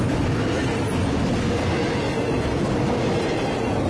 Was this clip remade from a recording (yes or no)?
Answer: no